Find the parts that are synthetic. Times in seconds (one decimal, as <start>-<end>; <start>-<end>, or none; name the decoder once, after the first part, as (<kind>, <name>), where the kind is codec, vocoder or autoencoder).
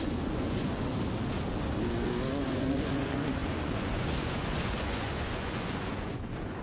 0.0-0.9 (vocoder, Vocos); 2.5-6.6